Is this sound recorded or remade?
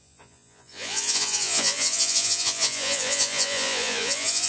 remade